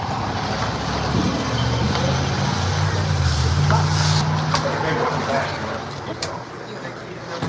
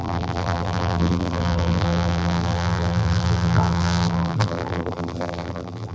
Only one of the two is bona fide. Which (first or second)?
first